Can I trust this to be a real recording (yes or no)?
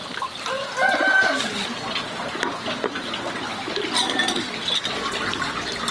yes